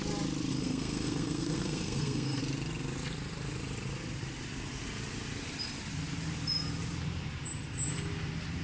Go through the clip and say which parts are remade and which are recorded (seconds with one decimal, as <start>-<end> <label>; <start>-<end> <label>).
0.0-0.5 recorded; 0.5-2.4 remade; 2.4-8.6 recorded